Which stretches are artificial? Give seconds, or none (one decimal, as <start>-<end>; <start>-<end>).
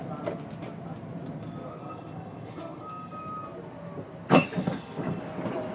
1.8-3.2; 4.6-5.2